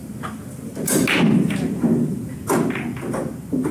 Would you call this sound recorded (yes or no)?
yes